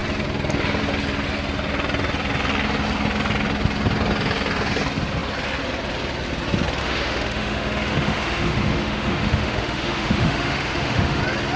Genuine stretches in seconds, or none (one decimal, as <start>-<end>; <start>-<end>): 0.0-6.8; 11.2-11.6